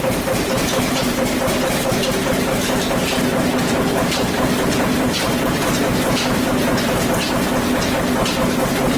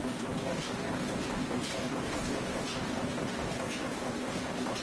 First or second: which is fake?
second